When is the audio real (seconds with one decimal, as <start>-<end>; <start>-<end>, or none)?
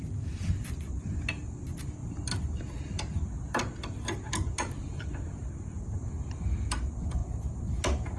2.0-2.8; 3.6-4.8; 7.2-8.2